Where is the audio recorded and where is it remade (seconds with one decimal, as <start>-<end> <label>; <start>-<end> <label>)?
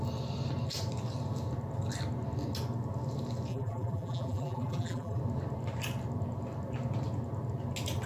0.0-3.5 recorded; 3.5-5.2 remade; 5.2-8.1 recorded